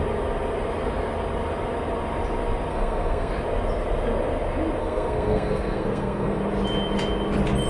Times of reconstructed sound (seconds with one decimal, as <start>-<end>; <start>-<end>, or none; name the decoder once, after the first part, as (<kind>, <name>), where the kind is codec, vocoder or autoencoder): 2.7-3.3 (codec, SNAC); 4.8-6.4